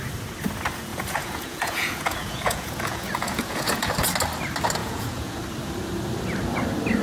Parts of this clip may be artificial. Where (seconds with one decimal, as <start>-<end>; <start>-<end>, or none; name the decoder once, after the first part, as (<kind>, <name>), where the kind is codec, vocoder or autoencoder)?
0.9-3.9 (vocoder, Vocos); 4.8-5.4